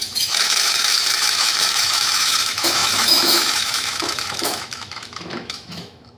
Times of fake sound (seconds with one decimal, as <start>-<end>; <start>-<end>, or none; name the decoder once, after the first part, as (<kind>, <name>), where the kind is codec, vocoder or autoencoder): 0.0-6.2 (autoencoder, DAC-VAE)